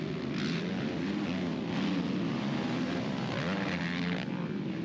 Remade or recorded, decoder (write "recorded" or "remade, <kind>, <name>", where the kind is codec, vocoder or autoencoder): recorded